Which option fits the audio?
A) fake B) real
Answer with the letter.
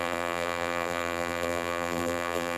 A